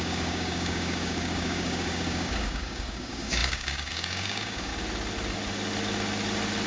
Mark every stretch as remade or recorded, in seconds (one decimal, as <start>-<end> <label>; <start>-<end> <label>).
0.0-4.7 remade; 4.7-6.7 recorded